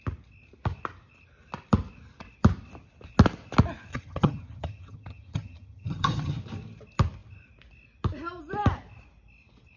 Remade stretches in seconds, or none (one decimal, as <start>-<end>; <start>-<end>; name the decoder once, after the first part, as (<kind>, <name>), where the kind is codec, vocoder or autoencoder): 3.9-6.4 (vocoder, HiFi-GAN)